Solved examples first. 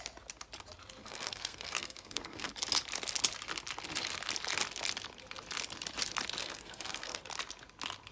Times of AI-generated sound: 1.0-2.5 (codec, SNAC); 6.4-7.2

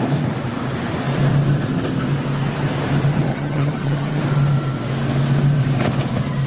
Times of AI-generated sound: 3.3-4.2 (vocoder, HiFi-GAN)

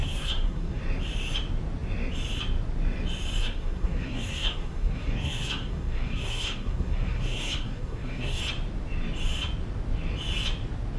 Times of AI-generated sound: 0.0-0.8 (codec, SNAC); 3.4-8.4

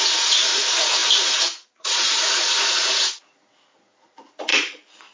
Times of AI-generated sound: 0.0-5.1 (vocoder, Vocos)

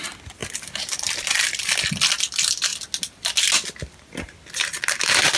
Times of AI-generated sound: none

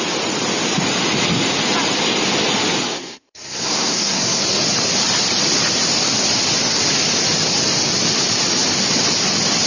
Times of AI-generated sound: 2.9-4.4 (codec, SNAC)

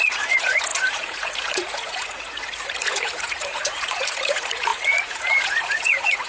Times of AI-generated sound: 0.0-6.3 (vocoder, Vocos)